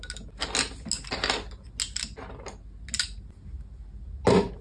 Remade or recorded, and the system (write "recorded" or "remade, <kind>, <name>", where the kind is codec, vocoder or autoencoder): recorded